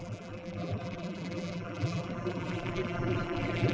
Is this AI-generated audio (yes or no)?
yes